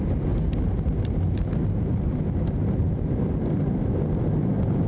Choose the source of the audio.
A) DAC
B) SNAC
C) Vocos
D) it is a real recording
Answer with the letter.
D